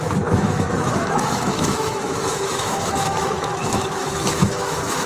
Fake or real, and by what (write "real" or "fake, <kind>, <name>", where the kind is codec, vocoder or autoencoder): fake, autoencoder, DAC-VAE